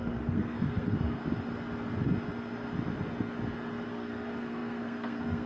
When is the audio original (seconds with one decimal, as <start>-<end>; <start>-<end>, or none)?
1.2-3.9